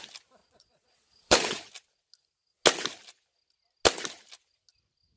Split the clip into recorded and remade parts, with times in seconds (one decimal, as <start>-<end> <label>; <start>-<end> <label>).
0.0-0.4 recorded; 0.4-1.7 remade; 1.7-5.2 recorded